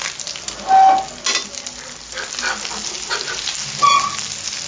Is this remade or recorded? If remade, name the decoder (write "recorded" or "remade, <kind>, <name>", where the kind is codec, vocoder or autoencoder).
recorded